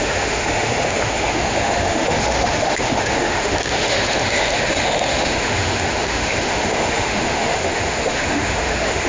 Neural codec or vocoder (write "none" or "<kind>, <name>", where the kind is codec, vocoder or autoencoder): autoencoder, DAC-VAE